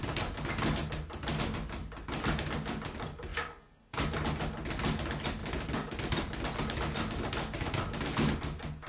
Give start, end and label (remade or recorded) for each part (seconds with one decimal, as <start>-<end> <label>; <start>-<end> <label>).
0.0-5.4 recorded; 5.4-6.6 remade; 6.6-8.9 recorded